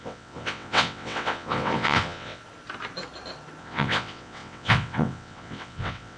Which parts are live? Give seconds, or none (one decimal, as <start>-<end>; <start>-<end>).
2.4-3.6